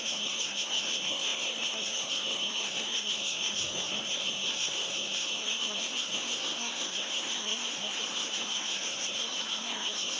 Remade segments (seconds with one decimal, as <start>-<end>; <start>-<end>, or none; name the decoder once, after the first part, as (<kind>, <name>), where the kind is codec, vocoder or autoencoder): 0.0-10.2 (codec, SNAC)